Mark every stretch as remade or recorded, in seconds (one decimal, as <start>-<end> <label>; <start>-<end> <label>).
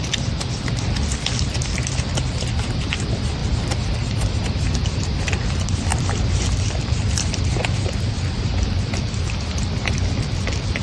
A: 0.0-3.4 remade; 3.4-3.9 recorded; 3.9-10.8 remade